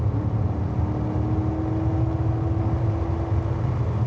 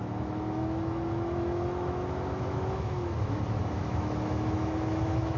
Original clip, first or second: first